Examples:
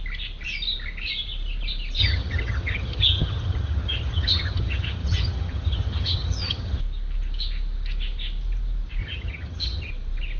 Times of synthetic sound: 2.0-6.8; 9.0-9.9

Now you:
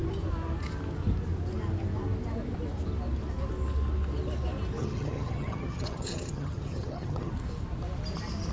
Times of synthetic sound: 4.8-7.3

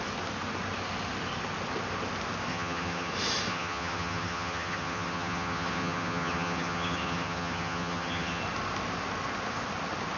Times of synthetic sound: 2.5-3.1; 3.5-8.4

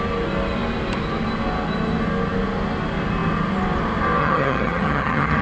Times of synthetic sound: 4.2-5.4